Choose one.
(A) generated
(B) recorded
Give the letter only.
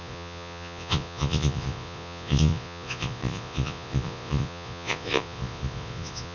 A